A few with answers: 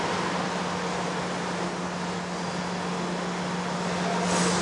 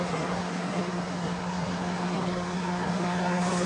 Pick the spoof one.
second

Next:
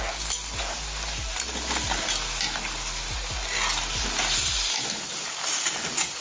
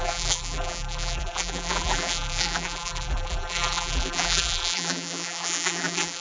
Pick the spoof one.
second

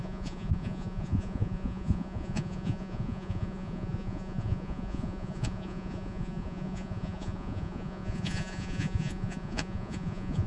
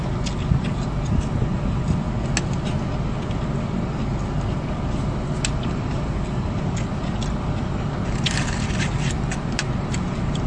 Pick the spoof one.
first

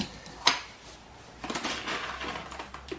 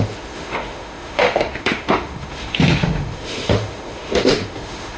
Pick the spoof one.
second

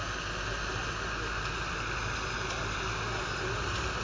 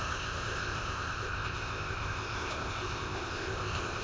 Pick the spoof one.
second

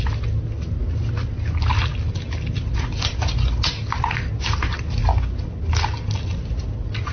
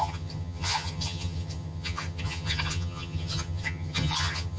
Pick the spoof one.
second